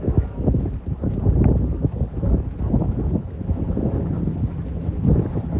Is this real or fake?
fake